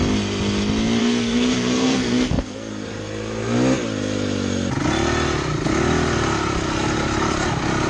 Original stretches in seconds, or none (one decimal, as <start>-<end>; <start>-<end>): 0.0-1.0; 2.7-7.9